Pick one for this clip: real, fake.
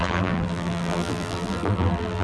fake